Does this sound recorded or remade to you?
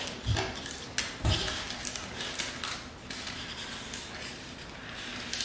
recorded